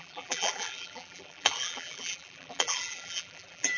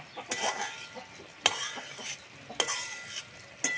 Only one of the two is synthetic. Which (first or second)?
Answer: first